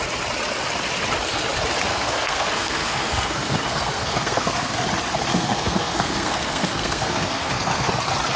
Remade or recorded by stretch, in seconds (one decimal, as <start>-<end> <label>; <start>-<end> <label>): 0.0-1.9 recorded; 1.9-4.7 remade; 4.7-5.3 recorded; 5.3-7.9 remade; 7.9-8.4 recorded